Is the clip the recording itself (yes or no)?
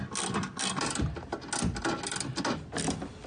yes